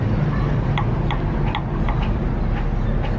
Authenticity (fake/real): real